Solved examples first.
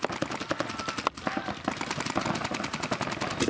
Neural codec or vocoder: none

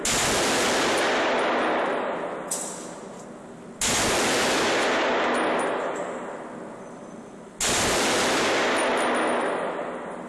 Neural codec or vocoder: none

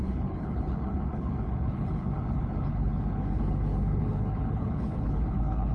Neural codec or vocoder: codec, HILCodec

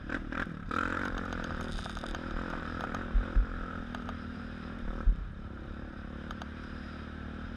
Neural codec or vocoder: vocoder, BigVGAN v2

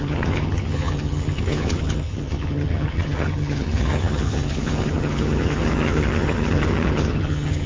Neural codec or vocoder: vocoder, HiFi-GAN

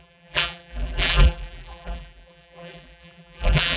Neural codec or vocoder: vocoder, BigVGAN v2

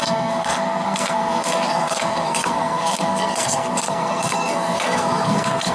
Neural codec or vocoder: codec, SNAC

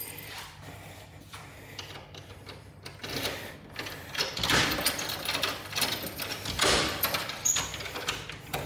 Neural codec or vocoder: vocoder, BigVGAN v2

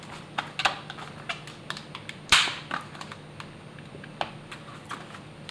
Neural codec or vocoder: none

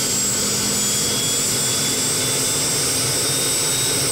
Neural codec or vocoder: none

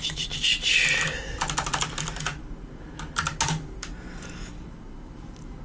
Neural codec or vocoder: none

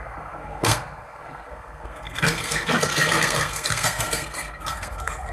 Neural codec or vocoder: codec, SNAC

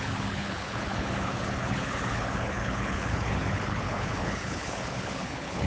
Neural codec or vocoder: codec, HILCodec